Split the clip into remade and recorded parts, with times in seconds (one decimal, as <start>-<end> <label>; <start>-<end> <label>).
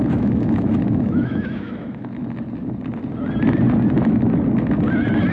0.0-2.2 remade; 2.2-5.3 recorded